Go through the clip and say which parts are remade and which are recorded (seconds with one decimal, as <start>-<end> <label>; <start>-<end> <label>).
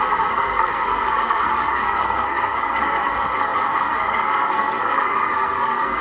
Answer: 0.0-6.0 remade